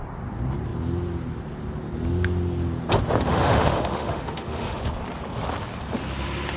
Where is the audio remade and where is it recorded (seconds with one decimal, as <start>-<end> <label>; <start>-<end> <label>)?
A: 0.0-3.3 recorded; 3.3-4.8 remade; 4.8-6.6 recorded